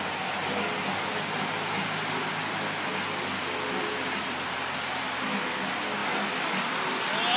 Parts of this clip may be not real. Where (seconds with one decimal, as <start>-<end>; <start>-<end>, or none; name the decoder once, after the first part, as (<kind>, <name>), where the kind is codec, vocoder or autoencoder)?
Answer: none